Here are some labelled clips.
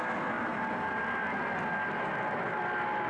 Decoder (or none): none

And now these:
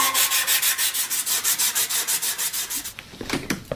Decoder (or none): none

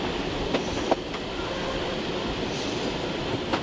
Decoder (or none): none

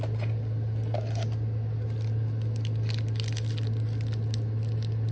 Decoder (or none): none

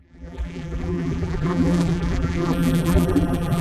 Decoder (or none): vocoder, BigVGAN v2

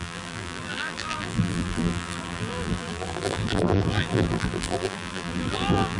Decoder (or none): vocoder, BigVGAN v2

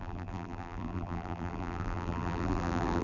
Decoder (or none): vocoder, BigVGAN v2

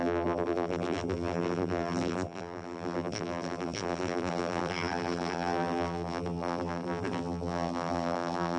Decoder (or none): vocoder, BigVGAN v2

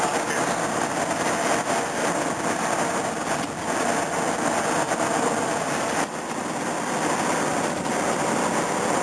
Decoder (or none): none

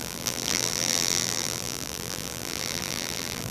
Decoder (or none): vocoder, BigVGAN v2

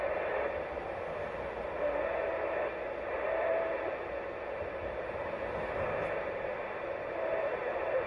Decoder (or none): none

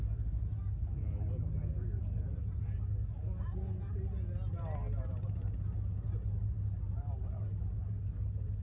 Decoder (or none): none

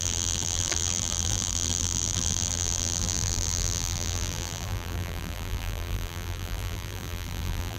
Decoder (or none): vocoder, BigVGAN v2